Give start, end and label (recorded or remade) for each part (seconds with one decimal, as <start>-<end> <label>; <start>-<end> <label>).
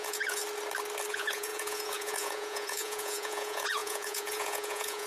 0.0-0.4 remade; 0.4-1.1 recorded; 1.1-5.1 remade